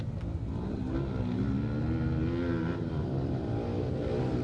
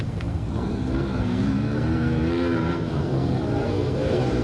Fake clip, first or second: second